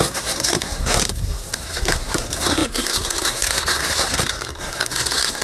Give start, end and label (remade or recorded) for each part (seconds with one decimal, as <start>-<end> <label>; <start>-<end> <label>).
0.0-5.4 remade